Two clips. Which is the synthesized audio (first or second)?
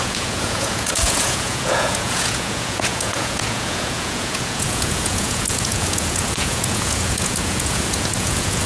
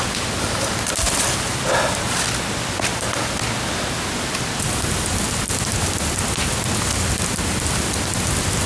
first